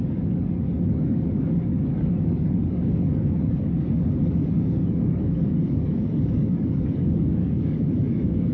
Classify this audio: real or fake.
fake